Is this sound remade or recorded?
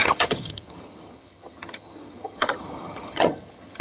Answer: remade